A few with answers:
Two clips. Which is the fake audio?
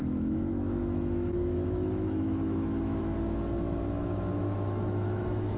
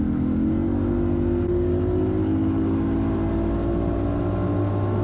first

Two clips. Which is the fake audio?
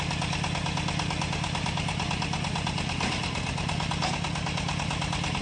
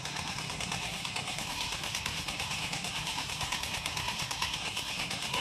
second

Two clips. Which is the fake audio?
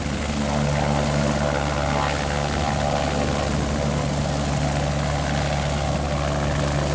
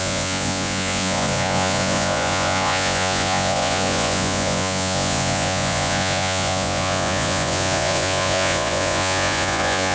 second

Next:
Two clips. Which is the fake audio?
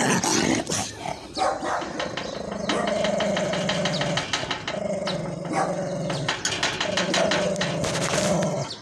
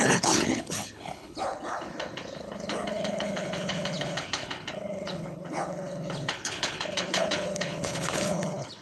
second